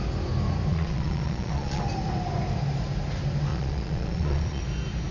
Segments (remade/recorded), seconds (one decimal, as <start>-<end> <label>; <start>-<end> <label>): 0.0-0.7 recorded; 0.7-1.8 remade; 1.8-3.5 recorded; 3.5-4.6 remade; 4.6-5.1 recorded